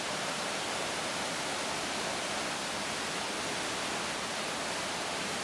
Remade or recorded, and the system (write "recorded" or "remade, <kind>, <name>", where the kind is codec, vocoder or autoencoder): recorded